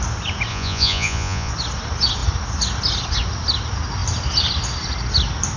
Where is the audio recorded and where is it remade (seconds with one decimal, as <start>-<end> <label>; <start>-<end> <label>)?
0.0-0.5 recorded; 0.5-1.5 remade; 1.5-5.6 recorded